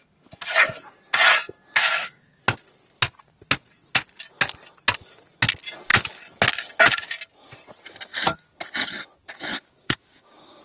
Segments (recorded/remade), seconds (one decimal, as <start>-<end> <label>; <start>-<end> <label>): 0.0-1.8 recorded; 1.8-2.4 remade; 2.4-9.5 recorded; 9.5-10.6 remade